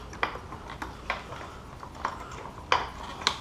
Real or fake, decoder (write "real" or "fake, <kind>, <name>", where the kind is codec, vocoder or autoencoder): real